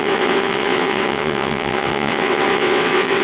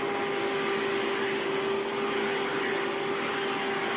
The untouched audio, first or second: second